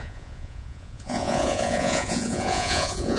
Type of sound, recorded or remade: remade